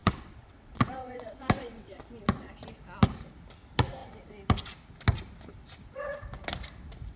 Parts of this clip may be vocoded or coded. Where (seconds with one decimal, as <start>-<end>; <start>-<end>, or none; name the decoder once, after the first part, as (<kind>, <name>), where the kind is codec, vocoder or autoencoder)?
0.0-2.0 (vocoder, WaveNeXt)